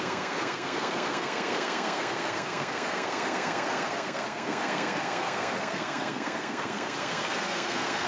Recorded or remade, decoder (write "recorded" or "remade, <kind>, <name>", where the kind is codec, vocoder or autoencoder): remade, codec, SNAC